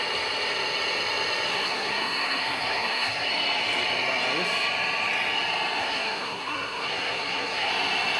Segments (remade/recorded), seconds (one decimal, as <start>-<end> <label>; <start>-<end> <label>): 0.0-1.5 recorded; 1.5-3.3 remade; 3.3-5.8 recorded; 5.8-7.7 remade; 7.7-8.2 recorded